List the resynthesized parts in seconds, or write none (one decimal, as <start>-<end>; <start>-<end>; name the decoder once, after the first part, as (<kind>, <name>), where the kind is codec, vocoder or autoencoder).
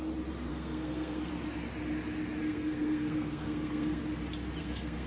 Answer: 0.5-1.3 (codec, SNAC); 2.4-4.0; 4.6-5.1